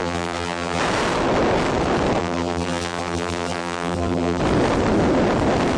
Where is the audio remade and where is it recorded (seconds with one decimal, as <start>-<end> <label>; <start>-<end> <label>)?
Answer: 0.0-0.8 remade; 0.8-2.2 recorded; 2.2-4.4 remade; 4.4-5.8 recorded